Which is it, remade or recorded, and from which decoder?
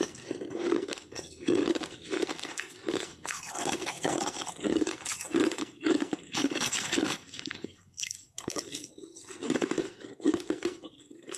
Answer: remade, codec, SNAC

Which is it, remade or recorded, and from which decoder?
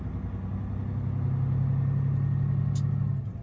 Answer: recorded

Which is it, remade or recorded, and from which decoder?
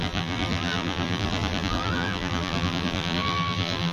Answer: remade, vocoder, BigVGAN v2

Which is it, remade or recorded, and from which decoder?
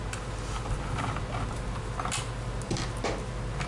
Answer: recorded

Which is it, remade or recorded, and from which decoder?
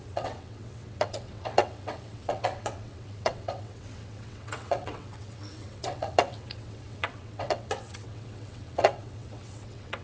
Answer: remade, vocoder, WaveNeXt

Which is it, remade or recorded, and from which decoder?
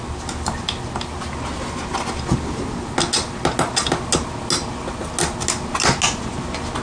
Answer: recorded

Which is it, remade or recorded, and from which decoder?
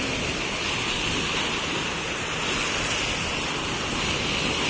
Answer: recorded